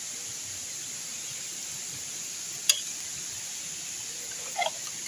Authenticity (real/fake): real